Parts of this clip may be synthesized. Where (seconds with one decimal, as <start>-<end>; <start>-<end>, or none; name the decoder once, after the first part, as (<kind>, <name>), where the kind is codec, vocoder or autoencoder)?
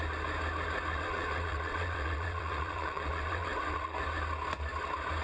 0.9-4.0 (vocoder, WaveNeXt)